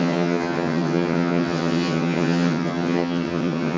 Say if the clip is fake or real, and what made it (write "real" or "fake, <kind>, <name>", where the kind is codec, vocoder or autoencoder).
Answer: fake, vocoder, HiFi-GAN